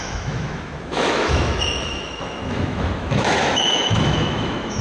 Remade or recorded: remade